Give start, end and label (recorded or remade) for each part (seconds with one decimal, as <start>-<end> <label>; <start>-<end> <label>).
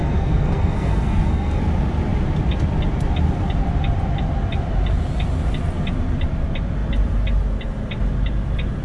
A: 0.0-1.6 remade; 1.6-8.8 recorded